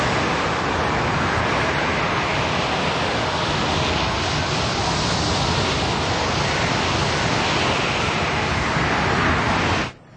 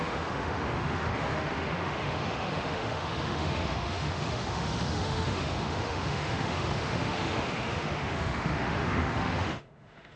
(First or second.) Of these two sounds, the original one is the first